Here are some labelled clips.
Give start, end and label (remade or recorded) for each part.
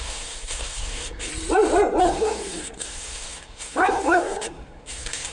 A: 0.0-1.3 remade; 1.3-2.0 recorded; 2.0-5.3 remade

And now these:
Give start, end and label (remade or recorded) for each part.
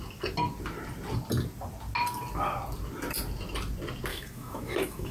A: 0.0-4.1 recorded; 4.1-5.1 remade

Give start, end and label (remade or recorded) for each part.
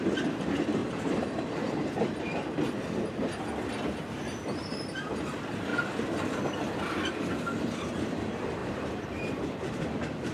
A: 0.0-0.8 recorded; 0.8-2.8 remade; 2.8-8.6 recorded; 8.6-9.4 remade; 9.4-10.3 recorded